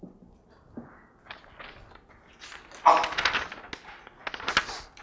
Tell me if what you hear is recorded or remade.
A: recorded